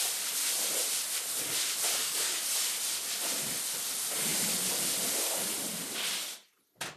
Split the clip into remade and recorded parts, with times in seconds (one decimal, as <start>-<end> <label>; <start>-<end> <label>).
0.0-2.0 recorded; 2.0-2.5 remade; 2.5-7.0 recorded